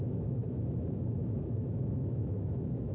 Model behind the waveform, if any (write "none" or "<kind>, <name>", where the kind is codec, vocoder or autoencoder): autoencoder, DAC-VAE